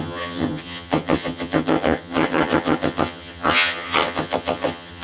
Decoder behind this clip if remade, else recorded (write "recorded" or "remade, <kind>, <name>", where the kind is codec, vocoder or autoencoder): remade, vocoder, HiFi-GAN